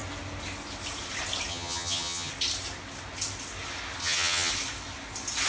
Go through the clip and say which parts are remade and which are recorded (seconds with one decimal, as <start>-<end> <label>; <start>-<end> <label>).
0.0-1.5 recorded; 1.5-2.3 remade; 2.3-4.0 recorded; 4.0-4.5 remade; 4.5-5.5 recorded